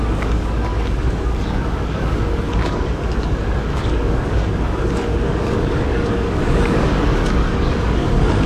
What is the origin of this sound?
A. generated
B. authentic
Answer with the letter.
A